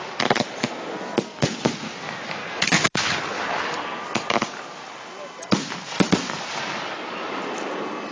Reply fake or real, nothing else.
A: real